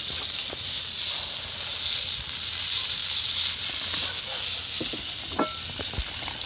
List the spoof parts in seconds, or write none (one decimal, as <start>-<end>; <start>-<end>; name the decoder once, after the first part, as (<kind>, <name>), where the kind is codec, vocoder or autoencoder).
none